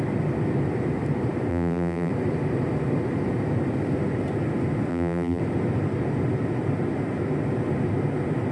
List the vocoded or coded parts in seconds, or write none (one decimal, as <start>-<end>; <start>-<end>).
1.5-2.1; 4.9-5.4